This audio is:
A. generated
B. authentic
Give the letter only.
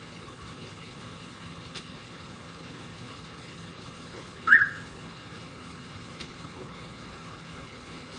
A